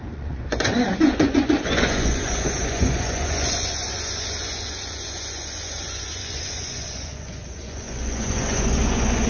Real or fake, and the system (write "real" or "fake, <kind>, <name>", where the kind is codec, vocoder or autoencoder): fake, vocoder, Vocos